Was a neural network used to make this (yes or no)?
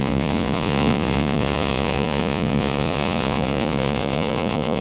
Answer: yes